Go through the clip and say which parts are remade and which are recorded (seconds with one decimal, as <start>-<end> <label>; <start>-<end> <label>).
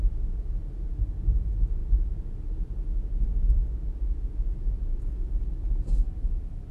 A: 0.0-6.7 recorded